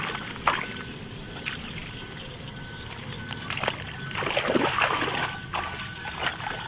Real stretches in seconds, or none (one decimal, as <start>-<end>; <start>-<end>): 0.0-6.7